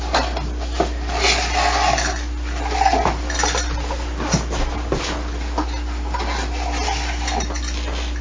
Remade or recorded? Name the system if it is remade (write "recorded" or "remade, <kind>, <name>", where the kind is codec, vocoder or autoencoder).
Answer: recorded